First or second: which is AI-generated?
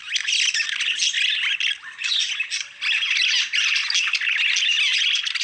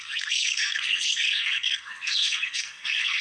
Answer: second